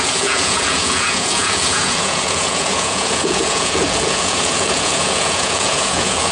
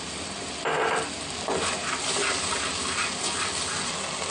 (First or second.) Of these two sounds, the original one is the second